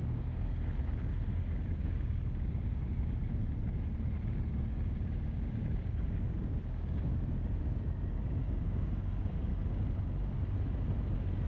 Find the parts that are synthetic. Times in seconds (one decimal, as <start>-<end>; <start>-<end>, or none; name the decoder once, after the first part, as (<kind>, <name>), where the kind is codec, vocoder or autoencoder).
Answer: 0.0-3.4 (codec, DAC); 4.7-7.1; 8.1-9.5